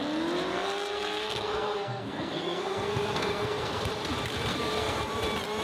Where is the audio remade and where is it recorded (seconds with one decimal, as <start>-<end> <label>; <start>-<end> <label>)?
0.0-0.5 recorded; 0.5-3.9 remade; 3.9-4.5 recorded; 4.5-5.1 remade; 5.1-5.6 recorded